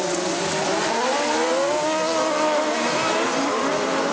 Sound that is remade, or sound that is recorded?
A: recorded